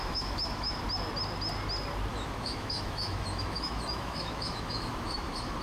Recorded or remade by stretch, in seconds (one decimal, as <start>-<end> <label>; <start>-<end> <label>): 0.0-0.8 remade; 0.8-2.1 recorded; 2.1-5.6 remade